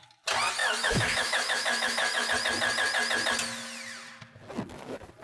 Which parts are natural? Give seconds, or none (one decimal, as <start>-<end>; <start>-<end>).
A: 0.0-0.6; 2.3-5.2